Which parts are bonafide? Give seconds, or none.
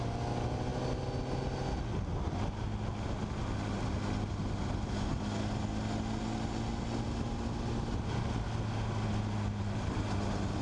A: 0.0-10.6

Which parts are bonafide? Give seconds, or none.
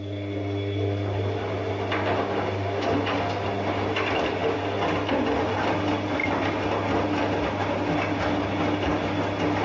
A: 0.0-9.6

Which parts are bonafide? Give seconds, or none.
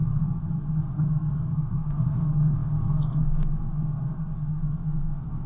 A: none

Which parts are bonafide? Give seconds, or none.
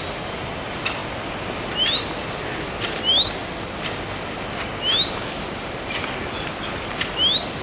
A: 0.0-7.6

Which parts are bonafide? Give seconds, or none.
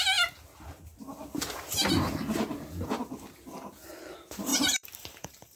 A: 0.0-4.5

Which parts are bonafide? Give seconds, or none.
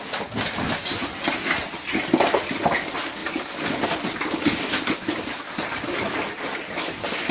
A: 0.0-7.3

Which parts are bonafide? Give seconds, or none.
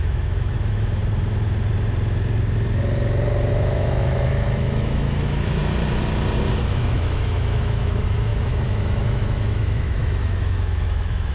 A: 1.0-3.5; 5.6-6.6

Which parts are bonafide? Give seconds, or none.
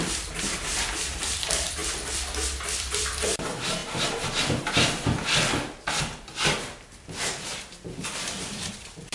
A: 1.8-2.8; 3.8-5.9